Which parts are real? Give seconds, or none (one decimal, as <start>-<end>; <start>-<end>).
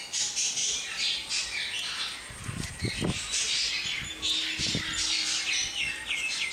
0.0-6.5